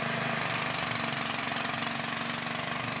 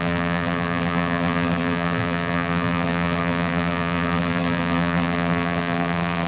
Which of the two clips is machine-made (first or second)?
second